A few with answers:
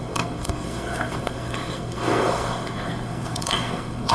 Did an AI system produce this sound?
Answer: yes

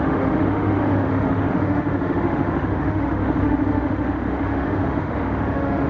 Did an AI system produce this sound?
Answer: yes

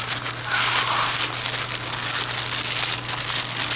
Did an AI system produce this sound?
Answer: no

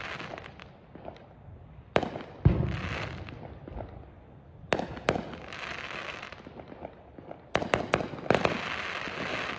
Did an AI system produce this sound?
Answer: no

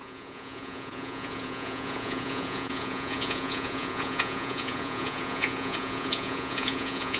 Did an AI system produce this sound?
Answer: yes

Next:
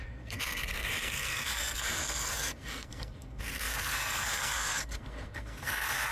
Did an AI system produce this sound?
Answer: yes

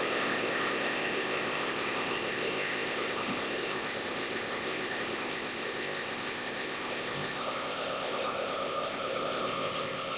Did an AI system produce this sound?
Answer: yes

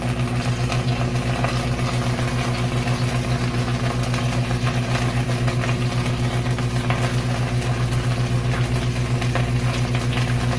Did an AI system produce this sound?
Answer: no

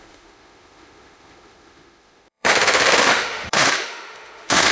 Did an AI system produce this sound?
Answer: yes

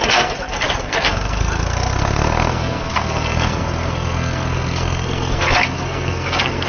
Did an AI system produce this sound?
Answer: yes